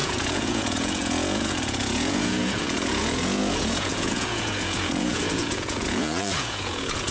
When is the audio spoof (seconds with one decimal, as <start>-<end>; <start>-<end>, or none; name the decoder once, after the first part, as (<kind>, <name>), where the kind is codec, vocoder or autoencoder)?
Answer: 0.0-7.1 (vocoder, Vocos)